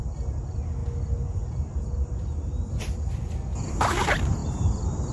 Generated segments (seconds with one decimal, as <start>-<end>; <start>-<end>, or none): none